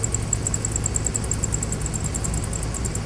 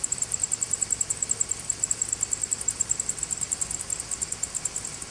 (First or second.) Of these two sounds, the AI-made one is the second